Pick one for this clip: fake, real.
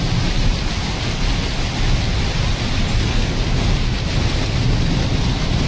real